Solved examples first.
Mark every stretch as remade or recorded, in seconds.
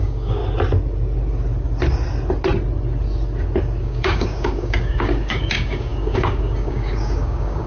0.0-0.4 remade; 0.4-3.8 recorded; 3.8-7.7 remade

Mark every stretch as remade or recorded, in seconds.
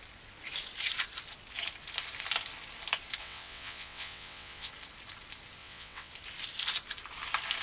0.0-3.2 recorded; 3.2-4.7 remade; 4.7-5.6 recorded; 5.6-6.1 remade; 6.1-7.6 recorded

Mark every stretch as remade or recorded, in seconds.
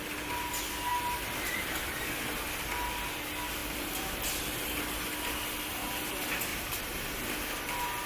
0.0-8.1 recorded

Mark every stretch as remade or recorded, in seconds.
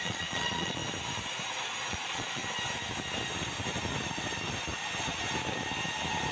0.0-0.8 remade; 0.8-1.9 recorded; 1.9-2.4 remade; 2.4-6.3 recorded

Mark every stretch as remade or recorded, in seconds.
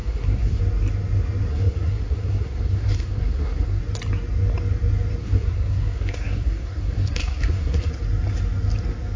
0.0-0.6 remade; 0.6-1.5 recorded; 1.5-3.8 remade; 3.8-5.2 recorded; 5.2-7.9 remade; 7.9-9.2 recorded